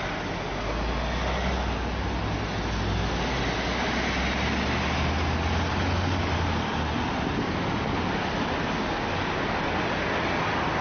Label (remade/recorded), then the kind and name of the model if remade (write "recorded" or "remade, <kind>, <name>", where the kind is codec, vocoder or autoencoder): recorded